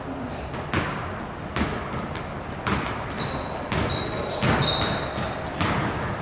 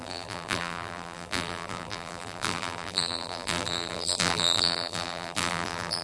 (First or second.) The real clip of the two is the first